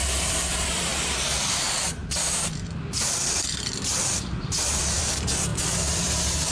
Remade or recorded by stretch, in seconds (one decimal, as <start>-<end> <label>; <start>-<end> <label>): 0.0-0.9 remade; 0.9-1.4 recorded; 1.4-6.5 remade

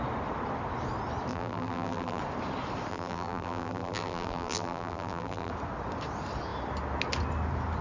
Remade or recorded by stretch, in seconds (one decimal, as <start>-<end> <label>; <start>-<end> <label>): 0.0-1.3 recorded; 1.3-2.2 remade; 2.2-2.9 recorded; 2.9-5.5 remade; 5.5-7.8 recorded

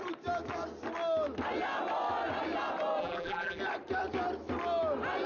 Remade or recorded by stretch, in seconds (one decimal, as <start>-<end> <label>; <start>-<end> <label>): 0.0-3.0 recorded; 3.0-3.6 remade; 3.6-5.3 recorded